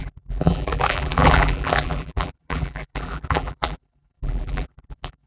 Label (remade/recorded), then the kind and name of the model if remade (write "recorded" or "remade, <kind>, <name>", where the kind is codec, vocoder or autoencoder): remade, vocoder, BigVGAN v2